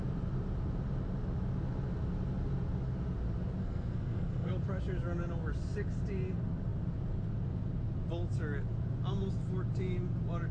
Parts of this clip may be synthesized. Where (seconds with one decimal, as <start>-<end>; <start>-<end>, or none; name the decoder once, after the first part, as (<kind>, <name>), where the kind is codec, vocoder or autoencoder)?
3.6-4.5 (codec, SNAC)

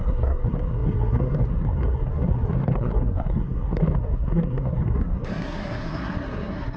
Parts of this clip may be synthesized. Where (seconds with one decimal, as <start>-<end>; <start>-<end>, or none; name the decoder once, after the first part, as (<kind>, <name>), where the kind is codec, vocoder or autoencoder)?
0.0-6.8 (codec, SNAC)

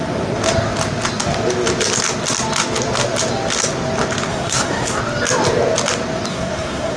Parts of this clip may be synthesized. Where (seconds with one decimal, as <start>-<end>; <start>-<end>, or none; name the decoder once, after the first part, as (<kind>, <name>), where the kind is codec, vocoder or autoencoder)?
4.3-5.0 (codec, SNAC); 6.3-7.0

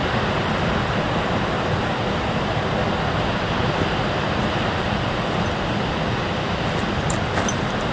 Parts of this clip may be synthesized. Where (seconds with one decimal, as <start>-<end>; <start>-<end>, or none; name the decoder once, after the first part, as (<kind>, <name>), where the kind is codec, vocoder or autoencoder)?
none

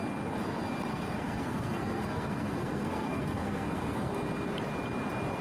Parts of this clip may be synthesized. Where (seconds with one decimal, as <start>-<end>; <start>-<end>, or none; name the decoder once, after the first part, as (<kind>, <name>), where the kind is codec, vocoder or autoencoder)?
0.9-4.1 (codec, SNAC)

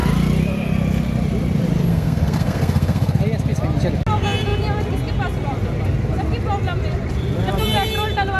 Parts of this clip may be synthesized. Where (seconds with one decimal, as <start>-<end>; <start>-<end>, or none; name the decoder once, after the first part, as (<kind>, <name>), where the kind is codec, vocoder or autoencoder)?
1.9-3.2 (codec, SNAC)

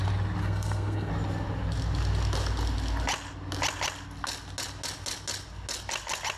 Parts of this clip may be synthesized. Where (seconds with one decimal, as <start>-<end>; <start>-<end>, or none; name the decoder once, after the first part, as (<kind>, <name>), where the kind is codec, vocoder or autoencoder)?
0.4-1.1 (codec, SNAC)

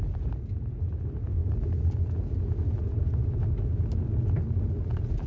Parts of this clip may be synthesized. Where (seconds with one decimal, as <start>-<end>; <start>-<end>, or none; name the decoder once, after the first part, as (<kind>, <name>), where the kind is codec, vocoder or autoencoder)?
none